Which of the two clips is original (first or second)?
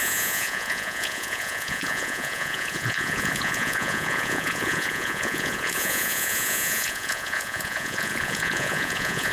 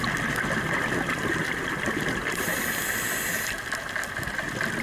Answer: second